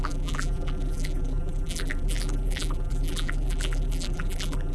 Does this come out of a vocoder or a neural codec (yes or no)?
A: yes